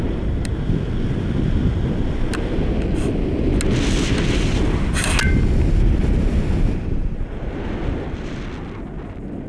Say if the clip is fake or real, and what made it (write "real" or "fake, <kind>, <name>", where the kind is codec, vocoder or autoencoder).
real